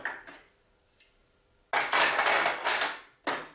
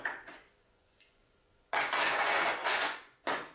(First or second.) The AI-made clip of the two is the second